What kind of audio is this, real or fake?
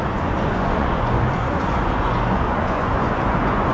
fake